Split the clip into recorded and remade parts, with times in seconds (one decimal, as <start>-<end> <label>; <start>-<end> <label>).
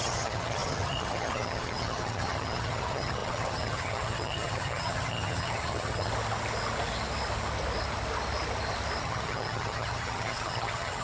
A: 0.0-6.1 remade; 6.1-9.0 recorded; 9.0-11.0 remade